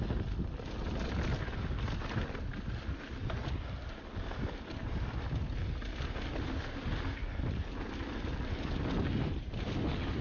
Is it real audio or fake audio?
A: real